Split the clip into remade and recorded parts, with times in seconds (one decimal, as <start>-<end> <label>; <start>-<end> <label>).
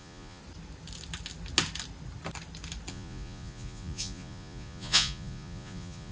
0.0-0.4 remade; 0.4-2.9 recorded; 2.9-6.1 remade